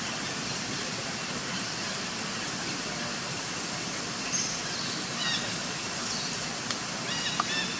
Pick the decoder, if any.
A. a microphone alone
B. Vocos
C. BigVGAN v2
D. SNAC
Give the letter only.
A